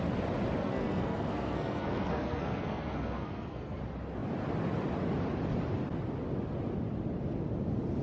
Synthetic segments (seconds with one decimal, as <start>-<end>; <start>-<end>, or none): 0.6-3.8